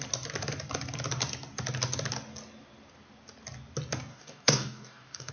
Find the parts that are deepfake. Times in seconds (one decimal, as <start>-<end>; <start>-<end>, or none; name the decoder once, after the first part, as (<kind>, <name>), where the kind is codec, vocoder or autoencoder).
4.1-5.3 (codec, DAC)